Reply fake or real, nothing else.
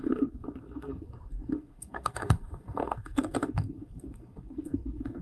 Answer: fake